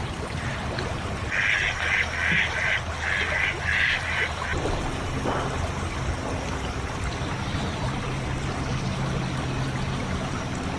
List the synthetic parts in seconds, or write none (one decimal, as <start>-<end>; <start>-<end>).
none